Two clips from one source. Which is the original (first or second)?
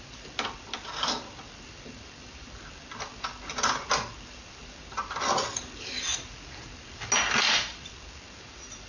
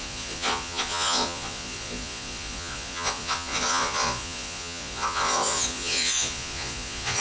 first